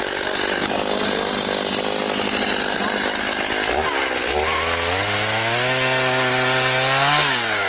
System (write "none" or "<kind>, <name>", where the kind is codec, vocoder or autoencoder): none